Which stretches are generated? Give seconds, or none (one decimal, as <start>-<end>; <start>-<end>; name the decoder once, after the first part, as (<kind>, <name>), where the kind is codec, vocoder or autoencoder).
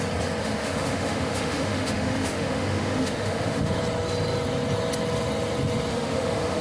0.4-3.8 (autoencoder, DAC-VAE); 5.9-6.6